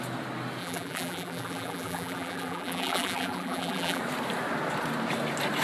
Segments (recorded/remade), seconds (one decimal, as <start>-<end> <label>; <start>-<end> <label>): 0.0-0.6 recorded; 0.6-4.0 remade; 4.0-5.6 recorded